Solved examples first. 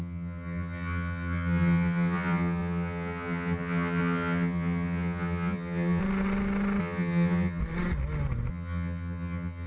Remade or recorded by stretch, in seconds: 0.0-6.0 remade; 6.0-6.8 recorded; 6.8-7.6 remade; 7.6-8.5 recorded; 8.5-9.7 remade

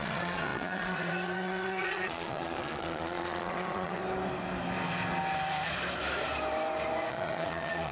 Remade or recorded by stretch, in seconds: 0.0-4.0 remade; 4.0-7.1 recorded; 7.1-7.9 remade

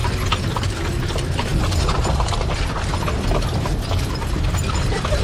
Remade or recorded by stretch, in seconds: 0.0-5.2 recorded

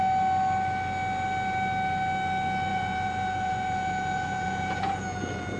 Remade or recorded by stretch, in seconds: 0.0-2.7 recorded; 2.7-5.6 remade

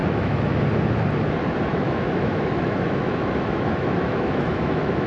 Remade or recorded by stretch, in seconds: 0.0-0.6 remade; 0.6-1.7 recorded; 1.7-5.1 remade